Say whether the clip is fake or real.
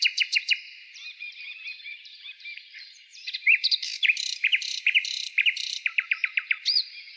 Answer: fake